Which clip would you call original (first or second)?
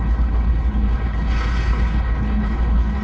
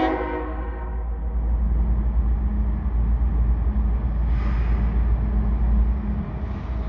second